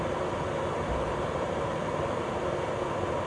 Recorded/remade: recorded